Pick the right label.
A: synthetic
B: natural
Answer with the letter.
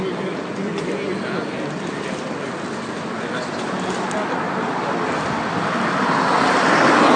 B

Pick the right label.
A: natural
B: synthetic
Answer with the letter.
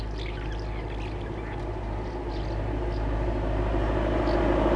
A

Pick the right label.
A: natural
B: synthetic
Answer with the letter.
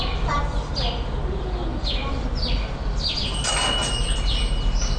A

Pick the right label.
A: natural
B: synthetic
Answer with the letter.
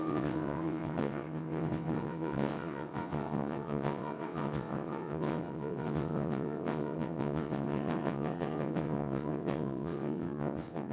B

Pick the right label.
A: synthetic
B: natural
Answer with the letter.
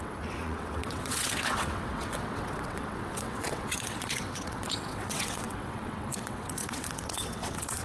A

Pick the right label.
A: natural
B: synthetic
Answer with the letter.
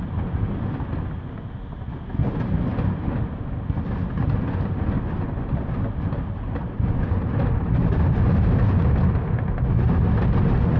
A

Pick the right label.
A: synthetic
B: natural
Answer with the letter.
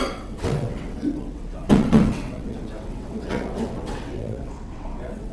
A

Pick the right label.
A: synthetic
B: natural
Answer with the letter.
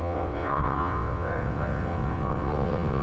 A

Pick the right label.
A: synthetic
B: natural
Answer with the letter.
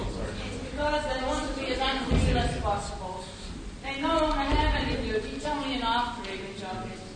B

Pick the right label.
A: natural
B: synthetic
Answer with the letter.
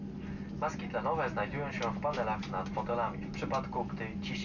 A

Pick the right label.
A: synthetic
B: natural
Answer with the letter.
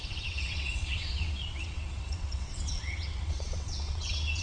A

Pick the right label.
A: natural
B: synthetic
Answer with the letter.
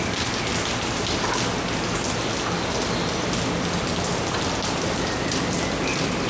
A